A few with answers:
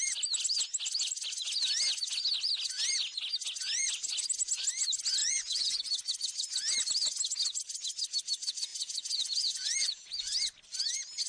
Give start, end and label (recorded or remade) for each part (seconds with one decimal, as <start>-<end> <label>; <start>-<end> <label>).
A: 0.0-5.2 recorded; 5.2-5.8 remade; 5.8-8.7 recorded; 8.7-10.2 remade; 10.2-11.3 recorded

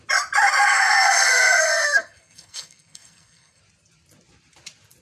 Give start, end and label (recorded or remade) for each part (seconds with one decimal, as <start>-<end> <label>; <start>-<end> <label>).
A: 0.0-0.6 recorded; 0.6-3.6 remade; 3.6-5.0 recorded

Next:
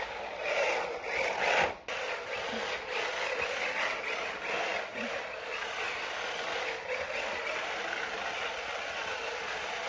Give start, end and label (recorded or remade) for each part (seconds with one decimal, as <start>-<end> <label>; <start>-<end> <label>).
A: 0.0-9.9 recorded

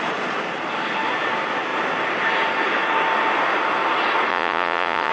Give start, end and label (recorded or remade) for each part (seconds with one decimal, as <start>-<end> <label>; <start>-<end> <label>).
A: 0.0-4.3 recorded; 4.3-5.1 remade